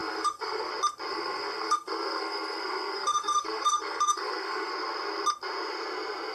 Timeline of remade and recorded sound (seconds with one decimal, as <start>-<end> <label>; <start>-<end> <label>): 0.0-0.7 remade; 0.7-1.1 recorded; 1.1-4.7 remade; 4.7-6.3 recorded